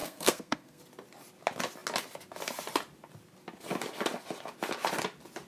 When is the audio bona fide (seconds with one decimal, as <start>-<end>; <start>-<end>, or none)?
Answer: 0.8-5.5